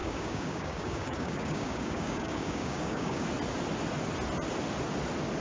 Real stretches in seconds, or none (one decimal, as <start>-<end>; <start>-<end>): 3.2-5.4